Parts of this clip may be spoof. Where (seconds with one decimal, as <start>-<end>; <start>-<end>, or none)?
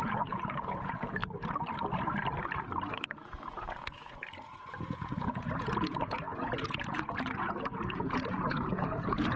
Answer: 0.0-1.2; 2.9-9.4